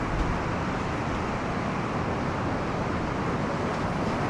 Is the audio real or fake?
real